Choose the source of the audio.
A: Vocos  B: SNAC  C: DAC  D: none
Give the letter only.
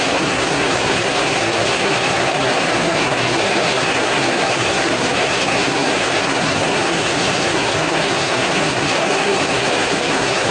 B